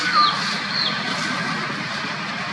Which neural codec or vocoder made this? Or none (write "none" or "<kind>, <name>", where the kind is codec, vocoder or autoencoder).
none